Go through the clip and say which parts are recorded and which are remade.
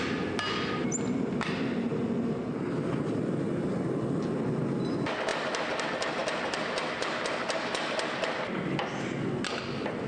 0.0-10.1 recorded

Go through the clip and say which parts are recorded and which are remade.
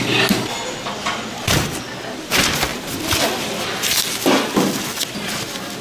0.0-5.8 recorded